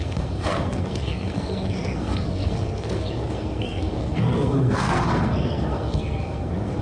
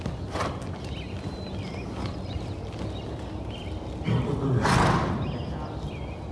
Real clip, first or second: second